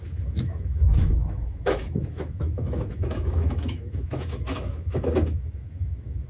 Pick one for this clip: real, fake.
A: fake